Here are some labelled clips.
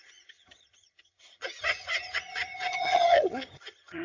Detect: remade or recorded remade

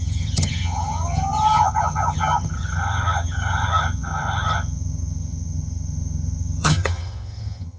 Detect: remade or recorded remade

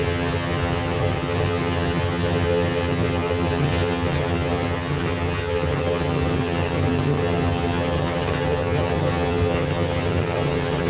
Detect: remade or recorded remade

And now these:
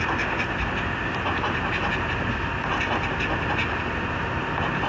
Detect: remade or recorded recorded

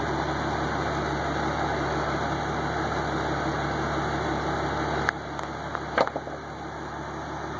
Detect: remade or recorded recorded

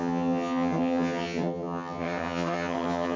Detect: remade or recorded remade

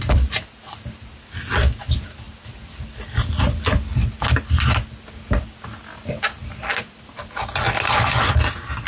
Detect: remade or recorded recorded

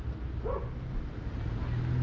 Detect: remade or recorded recorded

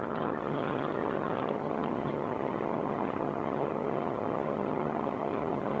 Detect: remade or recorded remade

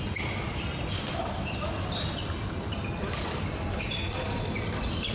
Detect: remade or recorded recorded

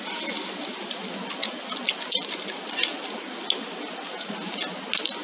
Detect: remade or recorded recorded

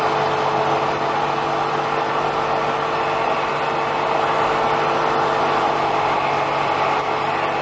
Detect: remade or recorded recorded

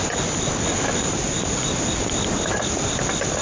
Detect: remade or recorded recorded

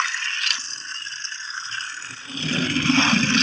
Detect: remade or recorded recorded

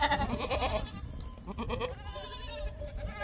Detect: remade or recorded recorded